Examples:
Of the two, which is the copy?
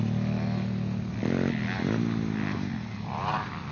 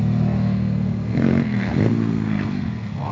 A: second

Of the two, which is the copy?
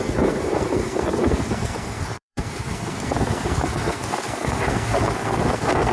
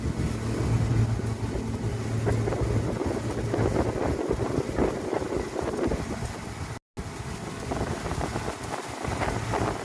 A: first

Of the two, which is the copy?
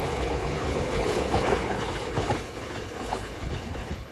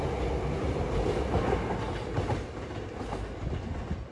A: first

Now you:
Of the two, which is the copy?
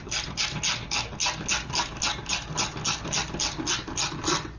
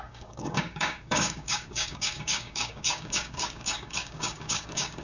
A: second